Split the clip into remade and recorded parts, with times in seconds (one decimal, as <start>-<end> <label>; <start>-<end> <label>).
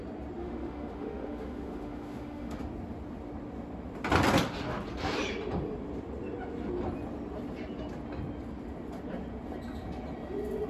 0.0-0.4 recorded; 0.4-2.6 remade; 2.6-10.7 recorded